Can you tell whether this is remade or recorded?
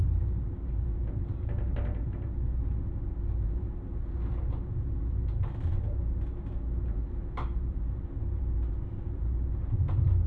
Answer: remade